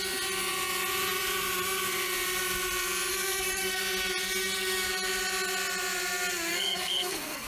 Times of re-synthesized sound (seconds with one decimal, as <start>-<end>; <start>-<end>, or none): 3.1-3.8; 6.5-7.5